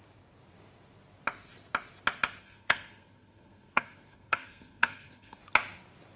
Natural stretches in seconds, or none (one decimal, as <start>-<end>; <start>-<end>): 0.0-2.4; 5.4-6.2